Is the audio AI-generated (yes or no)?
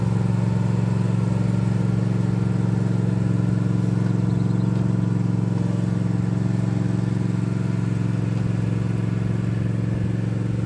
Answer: no